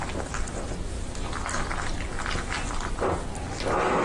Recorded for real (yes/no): yes